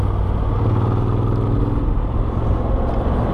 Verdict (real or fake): real